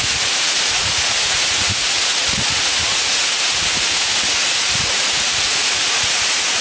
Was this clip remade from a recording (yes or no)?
yes